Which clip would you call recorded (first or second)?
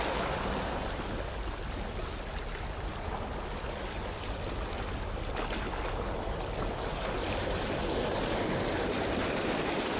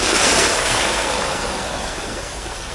first